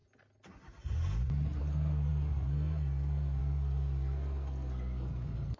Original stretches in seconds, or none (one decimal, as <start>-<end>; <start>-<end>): 0.0-1.6